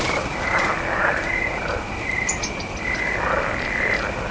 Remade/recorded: recorded